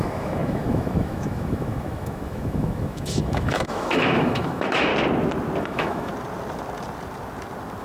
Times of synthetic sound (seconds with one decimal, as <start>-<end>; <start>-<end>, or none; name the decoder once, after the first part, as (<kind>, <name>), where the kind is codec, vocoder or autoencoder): 0.0-4.9 (autoencoder, DAC-VAE); 5.6-6.1